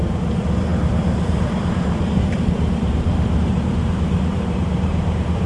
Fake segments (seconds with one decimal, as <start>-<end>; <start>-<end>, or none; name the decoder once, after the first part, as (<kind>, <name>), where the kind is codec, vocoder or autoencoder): 0.0-5.5 (vocoder, BigVGAN v2)